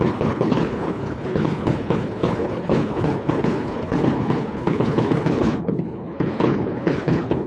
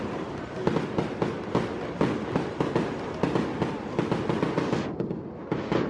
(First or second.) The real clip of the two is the second